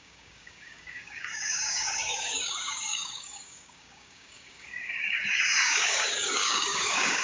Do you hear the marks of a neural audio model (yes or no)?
yes